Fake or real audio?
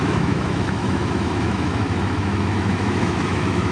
fake